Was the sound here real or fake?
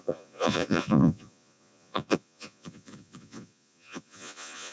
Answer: fake